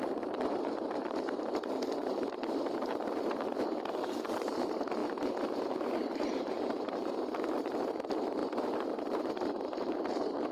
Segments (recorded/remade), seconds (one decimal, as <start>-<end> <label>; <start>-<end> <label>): 0.0-5.0 remade; 5.0-5.6 recorded; 5.6-10.5 remade